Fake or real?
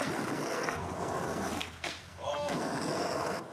fake